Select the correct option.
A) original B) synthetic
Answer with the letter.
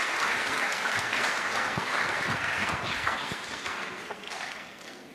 B